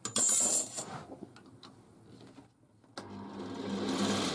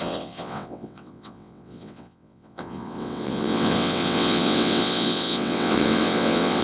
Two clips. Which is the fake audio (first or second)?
second